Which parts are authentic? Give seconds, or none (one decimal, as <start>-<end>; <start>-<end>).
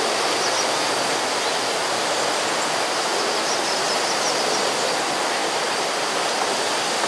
0.0-5.4; 6.1-7.1